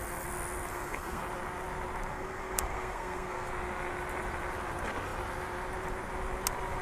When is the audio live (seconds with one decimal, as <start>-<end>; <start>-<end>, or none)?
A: 0.0-0.7; 1.2-2.1; 3.5-6.8